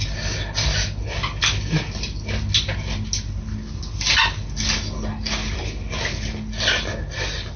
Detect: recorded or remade recorded